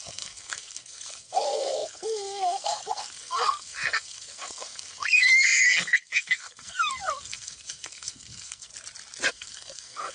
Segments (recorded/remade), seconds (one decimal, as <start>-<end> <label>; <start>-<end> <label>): 0.0-8.7 remade; 8.7-9.3 recorded; 9.3-10.1 remade